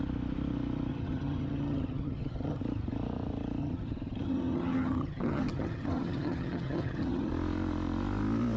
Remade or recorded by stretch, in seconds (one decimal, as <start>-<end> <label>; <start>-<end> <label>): 0.0-0.9 recorded; 0.9-2.6 remade; 2.6-3.6 recorded; 3.6-7.3 remade; 7.3-8.6 recorded